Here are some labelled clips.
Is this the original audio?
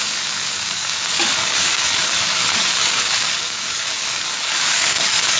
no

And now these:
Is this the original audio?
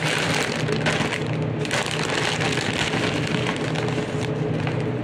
yes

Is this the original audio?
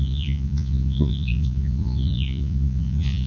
no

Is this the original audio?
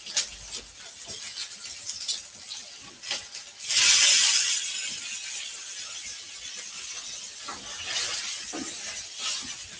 yes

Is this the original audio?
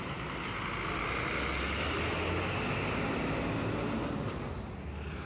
yes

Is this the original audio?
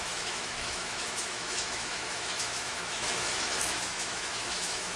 no